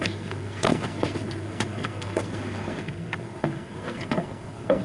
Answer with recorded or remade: remade